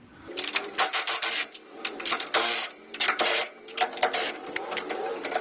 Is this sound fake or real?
real